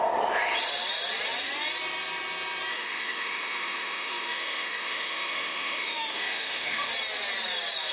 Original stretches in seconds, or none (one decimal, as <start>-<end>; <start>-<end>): 0.0-2.7; 6.9-7.9